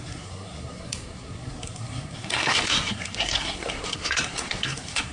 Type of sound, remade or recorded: remade